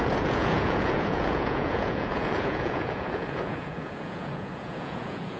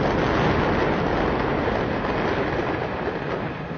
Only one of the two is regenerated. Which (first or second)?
first